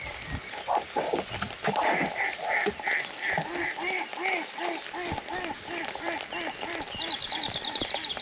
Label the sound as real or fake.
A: fake